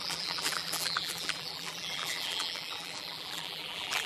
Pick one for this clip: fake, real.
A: fake